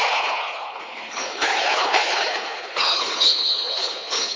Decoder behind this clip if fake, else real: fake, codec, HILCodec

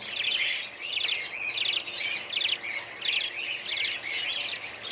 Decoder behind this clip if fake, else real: real